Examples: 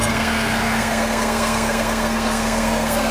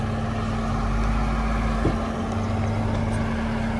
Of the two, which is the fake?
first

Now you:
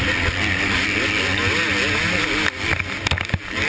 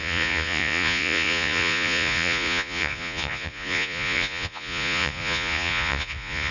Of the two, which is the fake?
second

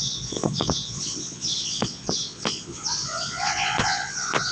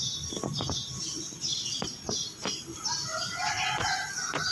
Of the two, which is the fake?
first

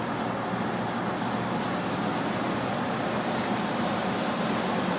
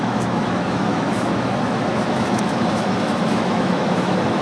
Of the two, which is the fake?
second